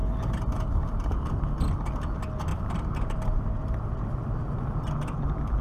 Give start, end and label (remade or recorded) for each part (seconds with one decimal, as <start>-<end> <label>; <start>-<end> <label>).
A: 0.0-2.5 recorded; 2.5-4.8 remade; 4.8-5.6 recorded